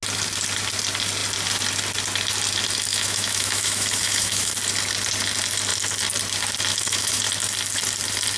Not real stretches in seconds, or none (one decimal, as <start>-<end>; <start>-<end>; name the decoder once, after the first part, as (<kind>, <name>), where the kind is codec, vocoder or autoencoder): 2.9-4.5 (autoencoder, DAC-VAE); 6.7-7.2